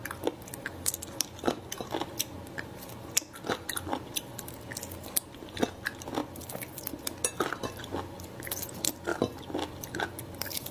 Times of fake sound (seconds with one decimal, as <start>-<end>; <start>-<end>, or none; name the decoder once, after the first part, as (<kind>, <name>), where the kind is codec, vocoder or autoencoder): 9.1-10.7 (vocoder, BigVGAN v2)